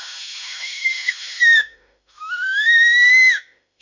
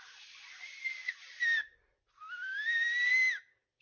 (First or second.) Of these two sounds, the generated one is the first